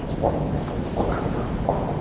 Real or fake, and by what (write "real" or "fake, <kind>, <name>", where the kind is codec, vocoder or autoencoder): real